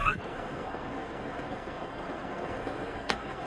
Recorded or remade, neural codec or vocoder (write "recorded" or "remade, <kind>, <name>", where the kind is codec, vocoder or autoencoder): remade, codec, SNAC